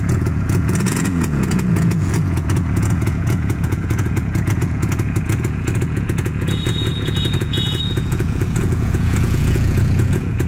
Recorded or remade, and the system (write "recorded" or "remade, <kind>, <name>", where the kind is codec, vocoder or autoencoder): remade, vocoder, Vocos